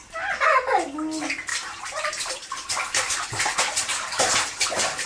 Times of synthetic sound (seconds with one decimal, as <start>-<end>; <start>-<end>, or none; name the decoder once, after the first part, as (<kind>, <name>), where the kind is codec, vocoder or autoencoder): 1.5-2.5 (vocoder, BigVGAN v2); 3.9-4.5